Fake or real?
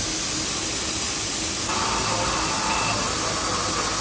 real